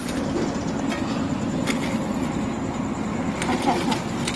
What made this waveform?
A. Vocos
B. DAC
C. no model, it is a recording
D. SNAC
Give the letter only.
C